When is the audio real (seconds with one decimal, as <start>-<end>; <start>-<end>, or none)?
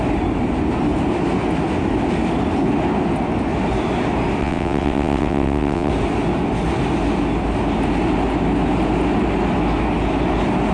0.0-4.4; 5.9-10.7